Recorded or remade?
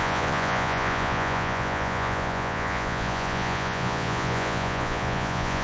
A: remade